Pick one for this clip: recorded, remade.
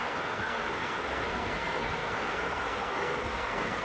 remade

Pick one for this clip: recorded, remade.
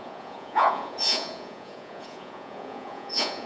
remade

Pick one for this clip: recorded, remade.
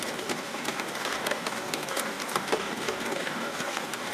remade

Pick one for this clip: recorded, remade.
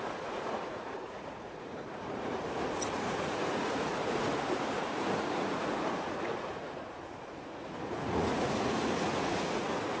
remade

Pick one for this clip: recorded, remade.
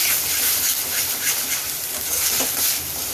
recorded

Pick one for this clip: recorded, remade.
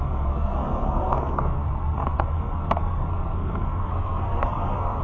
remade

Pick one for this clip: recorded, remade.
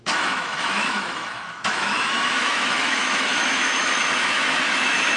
remade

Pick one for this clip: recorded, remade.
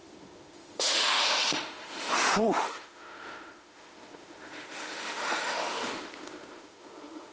remade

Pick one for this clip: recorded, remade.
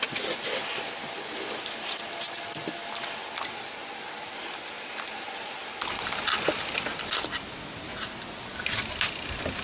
recorded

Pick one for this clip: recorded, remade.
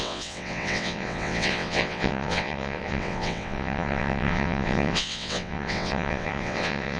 remade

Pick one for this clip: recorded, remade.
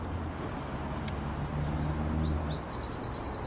recorded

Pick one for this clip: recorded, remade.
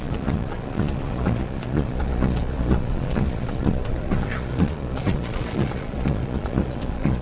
remade